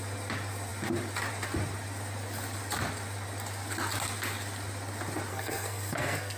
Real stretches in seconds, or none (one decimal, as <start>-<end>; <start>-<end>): 0.0-5.3